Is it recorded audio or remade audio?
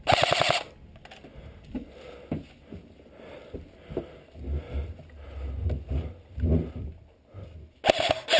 recorded